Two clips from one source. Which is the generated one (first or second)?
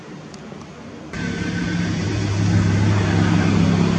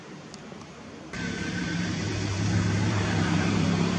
second